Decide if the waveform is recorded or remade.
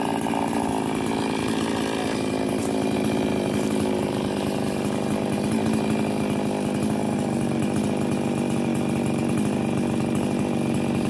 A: recorded